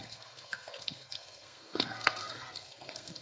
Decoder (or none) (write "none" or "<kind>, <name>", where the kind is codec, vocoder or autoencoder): codec, SNAC